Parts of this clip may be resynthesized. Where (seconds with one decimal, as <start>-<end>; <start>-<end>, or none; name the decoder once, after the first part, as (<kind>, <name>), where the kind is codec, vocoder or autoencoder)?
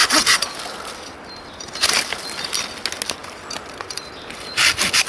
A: none